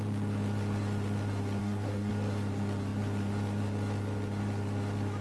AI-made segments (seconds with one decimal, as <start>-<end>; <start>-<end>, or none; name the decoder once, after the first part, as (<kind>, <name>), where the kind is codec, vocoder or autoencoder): 1.6-2.1 (codec, SNAC)